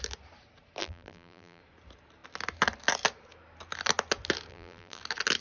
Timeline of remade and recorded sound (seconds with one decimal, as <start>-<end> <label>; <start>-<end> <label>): 0.0-0.8 recorded; 0.8-1.6 remade; 1.6-4.5 recorded; 4.5-5.0 remade; 5.0-5.4 recorded